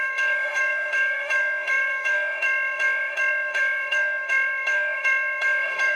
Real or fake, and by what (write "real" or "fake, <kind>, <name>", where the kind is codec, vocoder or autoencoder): fake, autoencoder, DAC-VAE